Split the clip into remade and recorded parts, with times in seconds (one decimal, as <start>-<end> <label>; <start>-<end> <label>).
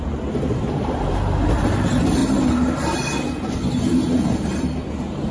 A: 0.0-5.3 recorded